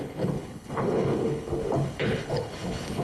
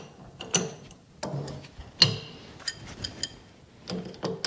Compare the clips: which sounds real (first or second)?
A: second